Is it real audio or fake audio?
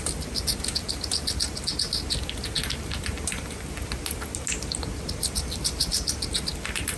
real